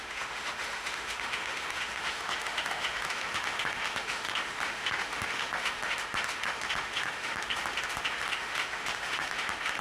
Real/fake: fake